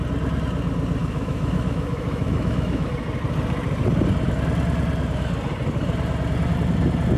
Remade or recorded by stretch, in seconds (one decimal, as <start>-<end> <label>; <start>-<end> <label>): 0.0-1.0 recorded; 1.0-2.9 remade; 2.9-7.2 recorded